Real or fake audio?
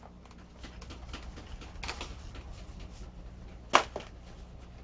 real